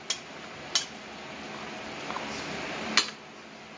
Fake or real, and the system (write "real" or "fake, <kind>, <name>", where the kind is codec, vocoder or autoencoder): real